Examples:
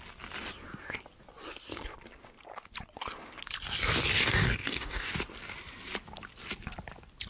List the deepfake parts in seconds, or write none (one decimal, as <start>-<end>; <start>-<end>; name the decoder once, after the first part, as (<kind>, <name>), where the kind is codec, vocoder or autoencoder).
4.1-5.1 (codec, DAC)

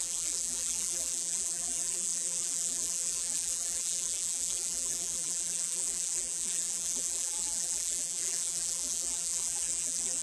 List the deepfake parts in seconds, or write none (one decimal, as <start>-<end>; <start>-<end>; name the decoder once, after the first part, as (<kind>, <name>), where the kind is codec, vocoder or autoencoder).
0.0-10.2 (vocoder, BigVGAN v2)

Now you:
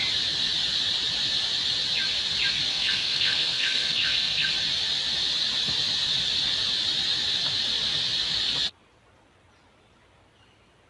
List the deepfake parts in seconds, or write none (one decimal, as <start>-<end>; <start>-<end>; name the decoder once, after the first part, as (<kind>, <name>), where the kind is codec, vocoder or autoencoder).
2.7-4.5 (codec, SNAC)